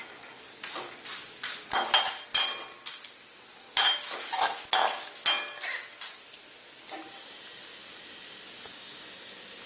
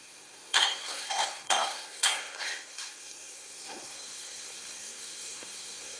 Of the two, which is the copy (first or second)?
second